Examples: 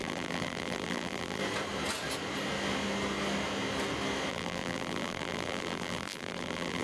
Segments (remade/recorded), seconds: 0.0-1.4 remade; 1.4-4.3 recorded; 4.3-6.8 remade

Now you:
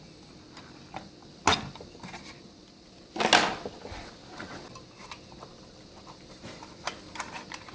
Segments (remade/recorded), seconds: 0.0-5.5 recorded; 5.5-6.7 remade; 6.7-7.7 recorded